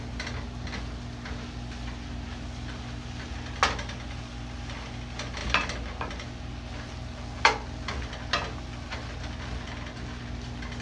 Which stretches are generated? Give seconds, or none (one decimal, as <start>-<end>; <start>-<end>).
none